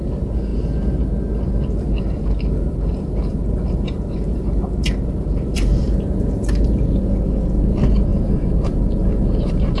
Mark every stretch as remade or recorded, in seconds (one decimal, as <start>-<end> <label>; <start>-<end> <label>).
0.0-3.3 recorded; 3.3-7.1 remade; 7.1-8.1 recorded; 8.1-9.8 remade